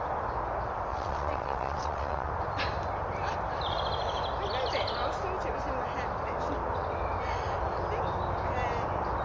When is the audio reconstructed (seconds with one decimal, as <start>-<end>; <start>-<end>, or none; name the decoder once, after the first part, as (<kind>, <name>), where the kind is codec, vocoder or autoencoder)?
0.9-2.3 (vocoder, WaveNeXt)